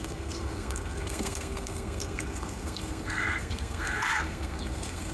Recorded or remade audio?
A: remade